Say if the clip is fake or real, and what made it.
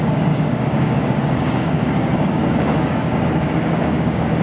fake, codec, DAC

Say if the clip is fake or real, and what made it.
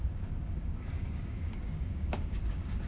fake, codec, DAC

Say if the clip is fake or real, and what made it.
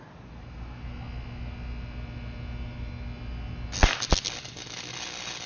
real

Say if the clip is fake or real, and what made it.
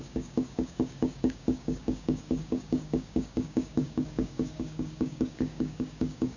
fake, codec, DAC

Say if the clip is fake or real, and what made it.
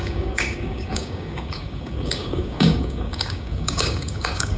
fake, codec, DAC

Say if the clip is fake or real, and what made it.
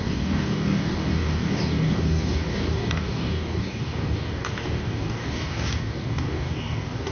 fake, codec, DAC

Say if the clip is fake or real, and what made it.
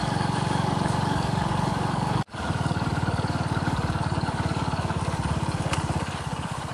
fake, codec, DAC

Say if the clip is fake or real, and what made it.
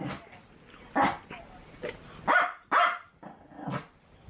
real